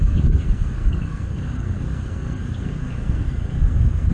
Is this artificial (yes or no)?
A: yes